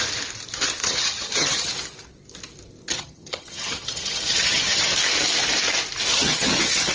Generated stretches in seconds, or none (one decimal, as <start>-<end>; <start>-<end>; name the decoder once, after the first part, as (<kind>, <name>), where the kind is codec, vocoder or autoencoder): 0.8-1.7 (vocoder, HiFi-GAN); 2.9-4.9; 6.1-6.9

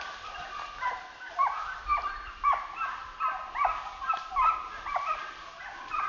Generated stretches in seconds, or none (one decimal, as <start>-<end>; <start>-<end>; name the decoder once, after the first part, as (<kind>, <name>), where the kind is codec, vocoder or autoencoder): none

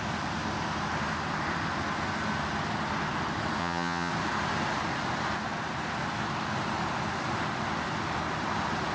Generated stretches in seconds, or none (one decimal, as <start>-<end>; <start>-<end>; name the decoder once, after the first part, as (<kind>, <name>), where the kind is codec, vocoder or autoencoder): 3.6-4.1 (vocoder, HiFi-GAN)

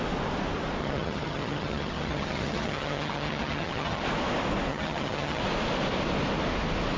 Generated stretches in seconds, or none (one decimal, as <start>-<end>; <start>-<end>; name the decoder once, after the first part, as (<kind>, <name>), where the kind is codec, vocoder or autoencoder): 0.8-4.0 (vocoder, HiFi-GAN); 4.7-5.4